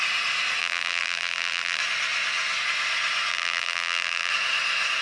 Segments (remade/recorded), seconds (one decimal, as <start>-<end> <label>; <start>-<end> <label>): 0.0-0.6 recorded; 0.6-1.8 remade; 1.8-3.3 recorded; 3.3-4.3 remade; 4.3-5.0 recorded